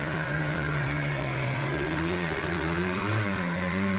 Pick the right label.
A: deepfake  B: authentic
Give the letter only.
A